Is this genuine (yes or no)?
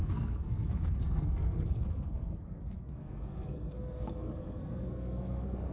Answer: no